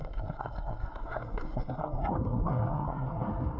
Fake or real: fake